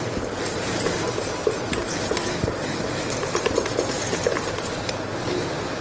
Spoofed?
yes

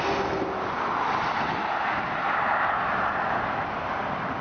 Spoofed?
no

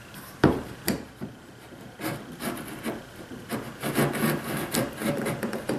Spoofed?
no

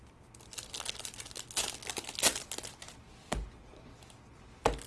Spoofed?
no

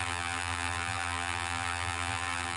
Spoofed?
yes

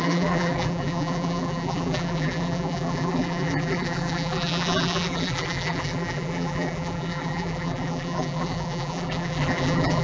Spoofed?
yes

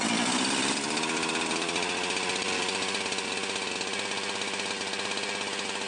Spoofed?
no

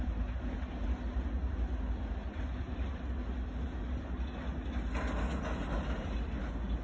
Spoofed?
no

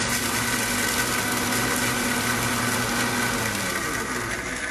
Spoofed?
no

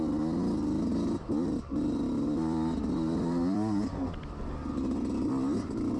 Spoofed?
yes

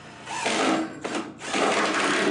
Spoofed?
no